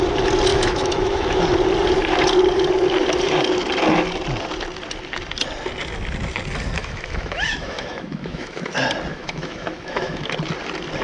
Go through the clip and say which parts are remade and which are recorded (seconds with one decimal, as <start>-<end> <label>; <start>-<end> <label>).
0.0-0.5 recorded; 0.5-1.4 remade; 1.4-6.8 recorded; 6.8-8.7 remade; 8.7-9.1 recorded; 9.1-10.3 remade; 10.3-11.0 recorded